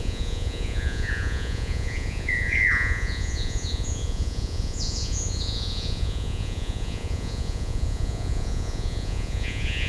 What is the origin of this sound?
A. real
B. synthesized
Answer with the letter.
B